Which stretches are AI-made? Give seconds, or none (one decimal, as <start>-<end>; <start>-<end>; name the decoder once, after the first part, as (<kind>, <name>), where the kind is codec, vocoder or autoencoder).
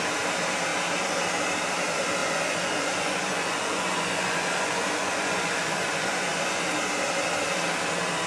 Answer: 2.2-6.6 (vocoder, Vocos)